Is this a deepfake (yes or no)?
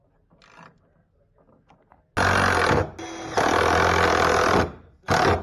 no